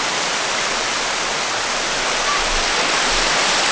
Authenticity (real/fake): real